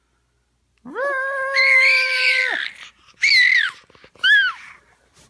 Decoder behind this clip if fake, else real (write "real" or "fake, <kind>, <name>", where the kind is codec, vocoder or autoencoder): real